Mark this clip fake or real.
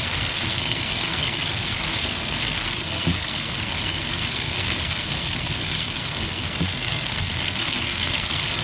fake